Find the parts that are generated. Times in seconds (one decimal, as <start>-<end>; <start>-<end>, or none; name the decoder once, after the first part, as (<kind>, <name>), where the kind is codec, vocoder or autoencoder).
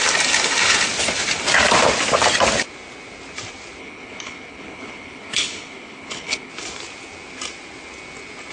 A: 3.8-6.5 (codec, HILCodec)